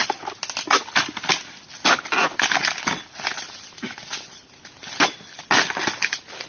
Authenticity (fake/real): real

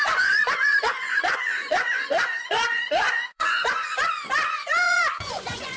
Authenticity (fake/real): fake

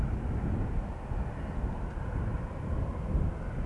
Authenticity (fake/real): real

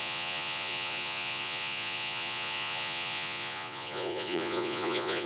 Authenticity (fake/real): fake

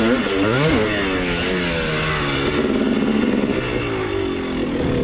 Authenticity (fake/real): real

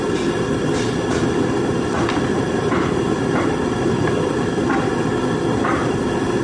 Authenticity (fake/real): real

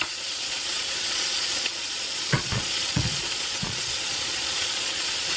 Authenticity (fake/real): fake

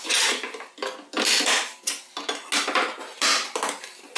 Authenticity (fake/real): real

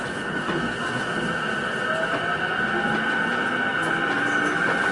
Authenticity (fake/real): real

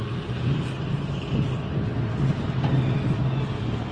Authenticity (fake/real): real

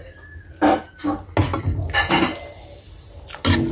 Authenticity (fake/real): real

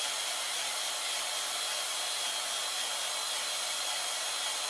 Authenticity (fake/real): real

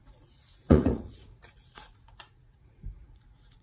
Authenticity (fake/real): fake